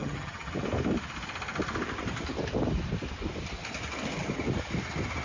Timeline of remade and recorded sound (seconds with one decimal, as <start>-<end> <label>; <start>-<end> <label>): 0.0-0.5 remade; 0.5-5.2 recorded